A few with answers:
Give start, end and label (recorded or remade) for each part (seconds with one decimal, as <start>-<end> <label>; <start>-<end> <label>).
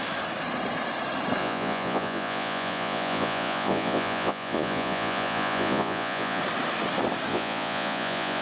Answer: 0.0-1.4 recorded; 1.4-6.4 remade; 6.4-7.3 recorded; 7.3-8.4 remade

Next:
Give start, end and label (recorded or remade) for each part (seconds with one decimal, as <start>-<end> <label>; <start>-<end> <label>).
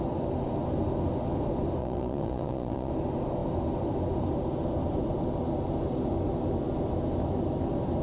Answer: 0.0-1.8 recorded; 1.8-2.9 remade; 2.9-8.0 recorded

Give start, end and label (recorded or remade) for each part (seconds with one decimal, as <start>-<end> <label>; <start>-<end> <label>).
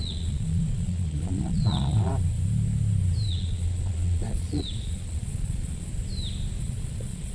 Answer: 0.0-2.1 remade; 2.1-3.3 recorded; 3.3-5.9 remade; 5.9-6.6 recorded; 6.6-7.3 remade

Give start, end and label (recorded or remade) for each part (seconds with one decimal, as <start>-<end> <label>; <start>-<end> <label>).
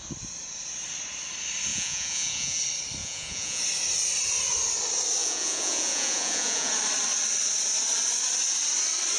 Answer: 0.0-1.7 recorded; 1.7-2.6 remade; 2.6-3.0 recorded; 3.0-3.6 remade; 3.6-5.2 recorded; 5.2-6.7 remade; 6.7-9.2 recorded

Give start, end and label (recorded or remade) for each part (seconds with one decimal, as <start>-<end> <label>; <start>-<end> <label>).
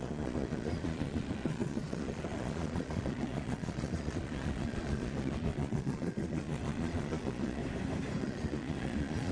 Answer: 0.0-7.6 remade; 7.6-8.2 recorded; 8.2-9.3 remade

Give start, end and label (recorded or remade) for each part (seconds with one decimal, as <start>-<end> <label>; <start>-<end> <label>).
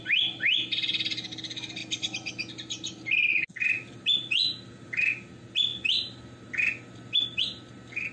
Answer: 0.0-8.1 recorded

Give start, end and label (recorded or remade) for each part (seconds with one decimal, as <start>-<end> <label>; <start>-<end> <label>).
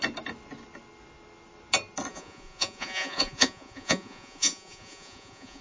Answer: 0.0-2.1 recorded; 2.1-5.6 remade